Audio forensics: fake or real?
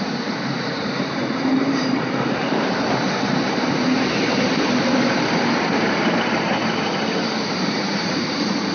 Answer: fake